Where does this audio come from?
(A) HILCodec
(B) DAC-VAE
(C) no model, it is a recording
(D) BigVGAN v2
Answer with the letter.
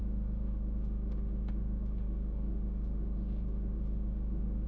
B